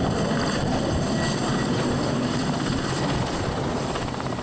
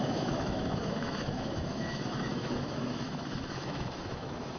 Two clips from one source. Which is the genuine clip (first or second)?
first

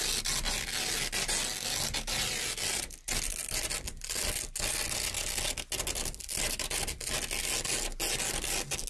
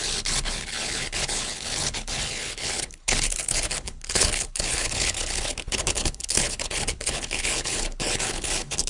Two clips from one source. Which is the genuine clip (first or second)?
first